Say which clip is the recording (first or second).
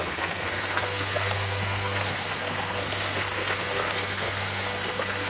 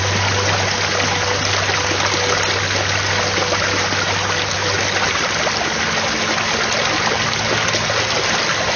second